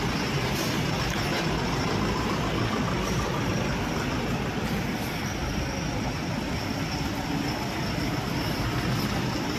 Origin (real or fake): real